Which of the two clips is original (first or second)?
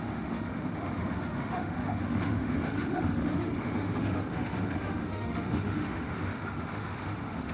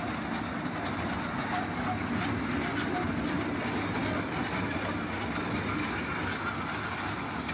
second